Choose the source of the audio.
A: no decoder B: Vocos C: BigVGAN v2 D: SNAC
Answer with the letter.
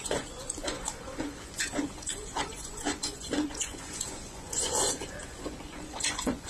B